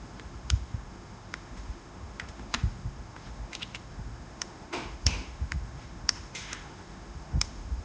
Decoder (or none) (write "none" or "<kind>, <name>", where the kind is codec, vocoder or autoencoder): autoencoder, DAC-VAE